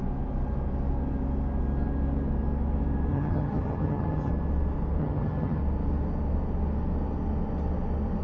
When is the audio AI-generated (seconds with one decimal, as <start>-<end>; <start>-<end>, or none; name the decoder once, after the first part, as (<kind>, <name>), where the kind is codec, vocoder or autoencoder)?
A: 3.1-4.3 (vocoder, HiFi-GAN); 5.0-5.6

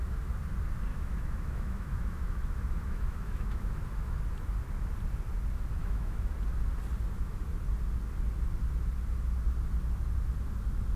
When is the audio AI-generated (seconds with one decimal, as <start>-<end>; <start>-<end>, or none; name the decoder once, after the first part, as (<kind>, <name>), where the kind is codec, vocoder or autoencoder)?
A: 0.9-4.2 (autoencoder, DAC-VAE); 5.8-6.3

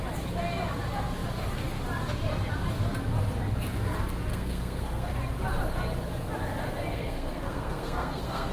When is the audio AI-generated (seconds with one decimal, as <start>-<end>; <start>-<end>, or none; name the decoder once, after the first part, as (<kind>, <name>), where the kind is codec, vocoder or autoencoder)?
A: 4.3-5.1 (codec, SNAC); 6.9-8.5

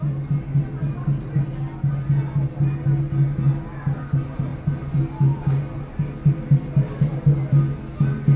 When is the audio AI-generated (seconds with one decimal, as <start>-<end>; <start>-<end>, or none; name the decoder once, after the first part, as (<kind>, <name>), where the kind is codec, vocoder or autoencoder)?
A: none